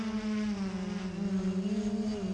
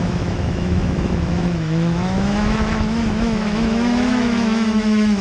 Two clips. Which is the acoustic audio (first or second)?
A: first